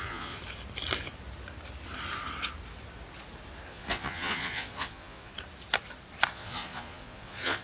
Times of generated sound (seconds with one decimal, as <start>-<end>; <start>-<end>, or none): 0.0-0.4; 3.7-5.3; 6.3-7.6